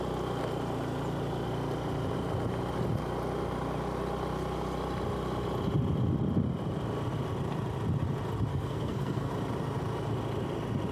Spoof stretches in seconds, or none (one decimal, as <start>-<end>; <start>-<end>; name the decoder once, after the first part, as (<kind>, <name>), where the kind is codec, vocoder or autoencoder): 8.5-9.3 (codec, SNAC)